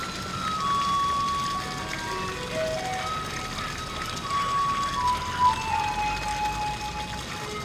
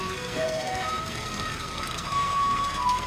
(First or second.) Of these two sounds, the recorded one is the first